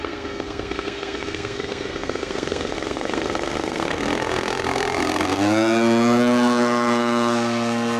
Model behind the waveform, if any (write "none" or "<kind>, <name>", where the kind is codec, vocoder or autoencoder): codec, SNAC